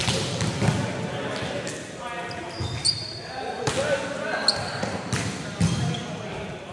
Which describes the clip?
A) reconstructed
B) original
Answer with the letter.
B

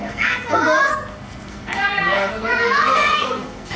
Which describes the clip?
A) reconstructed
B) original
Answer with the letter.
A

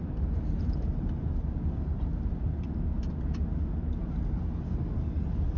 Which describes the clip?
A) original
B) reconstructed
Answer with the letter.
A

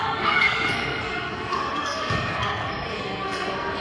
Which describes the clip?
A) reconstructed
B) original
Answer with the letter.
A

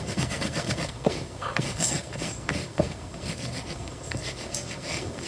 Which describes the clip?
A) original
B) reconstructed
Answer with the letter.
B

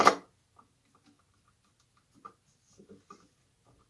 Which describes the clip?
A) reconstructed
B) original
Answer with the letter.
B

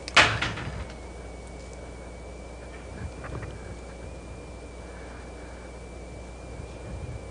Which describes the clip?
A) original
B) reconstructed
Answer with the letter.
A